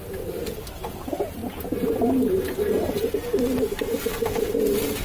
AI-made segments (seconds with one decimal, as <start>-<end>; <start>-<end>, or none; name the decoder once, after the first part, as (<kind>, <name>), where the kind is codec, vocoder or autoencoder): none